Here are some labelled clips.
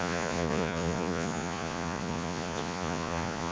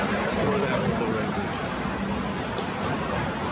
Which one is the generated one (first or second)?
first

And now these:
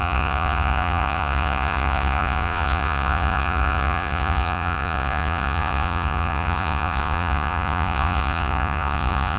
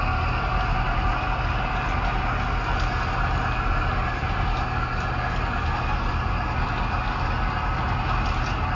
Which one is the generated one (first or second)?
first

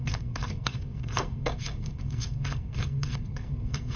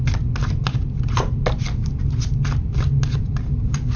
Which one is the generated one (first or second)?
first